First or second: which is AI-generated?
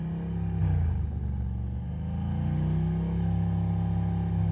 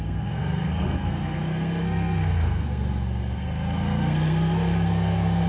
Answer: second